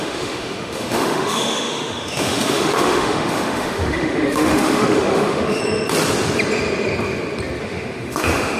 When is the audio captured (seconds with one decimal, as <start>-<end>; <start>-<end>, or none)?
5.6-7.6